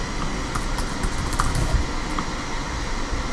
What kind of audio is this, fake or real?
real